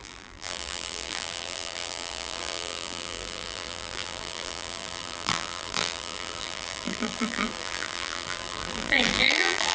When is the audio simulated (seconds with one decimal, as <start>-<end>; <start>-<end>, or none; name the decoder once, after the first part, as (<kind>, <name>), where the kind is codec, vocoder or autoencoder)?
0.0-9.7 (vocoder, BigVGAN v2)